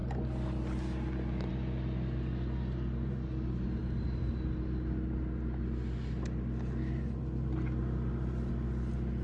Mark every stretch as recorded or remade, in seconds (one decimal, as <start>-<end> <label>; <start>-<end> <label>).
0.0-9.2 recorded